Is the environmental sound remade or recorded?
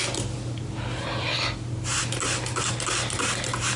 recorded